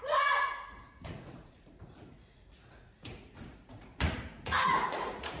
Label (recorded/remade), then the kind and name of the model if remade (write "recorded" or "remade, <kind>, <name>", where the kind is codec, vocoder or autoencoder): remade, vocoder, Vocos